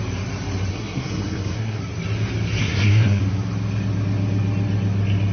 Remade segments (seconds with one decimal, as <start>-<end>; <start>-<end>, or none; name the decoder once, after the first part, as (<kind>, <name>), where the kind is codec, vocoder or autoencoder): 0.7-1.8 (codec, SNAC); 2.6-3.2